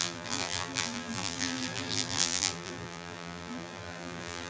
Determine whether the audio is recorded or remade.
remade